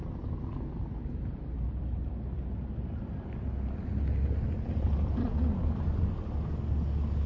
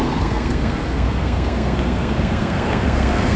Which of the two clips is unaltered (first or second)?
first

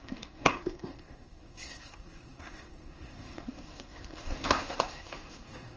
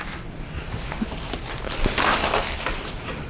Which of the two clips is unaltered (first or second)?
second